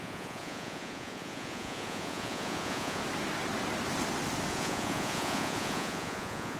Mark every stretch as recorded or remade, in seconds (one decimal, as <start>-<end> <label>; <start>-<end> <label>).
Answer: 0.0-3.0 remade; 3.0-4.5 recorded; 4.5-6.6 remade